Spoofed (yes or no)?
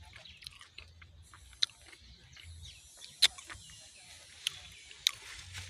no